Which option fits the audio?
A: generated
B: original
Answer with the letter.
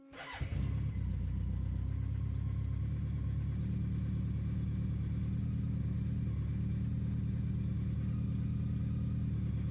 B